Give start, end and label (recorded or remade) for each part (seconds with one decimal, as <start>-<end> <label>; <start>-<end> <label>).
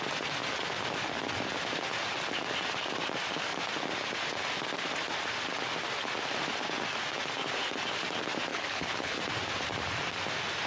0.0-8.5 recorded; 8.5-9.2 remade; 9.2-10.7 recorded